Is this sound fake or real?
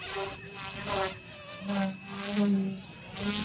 real